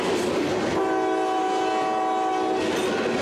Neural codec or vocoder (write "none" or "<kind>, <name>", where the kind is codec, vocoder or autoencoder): none